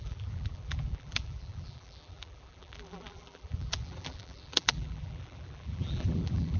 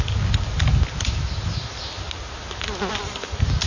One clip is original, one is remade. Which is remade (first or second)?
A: first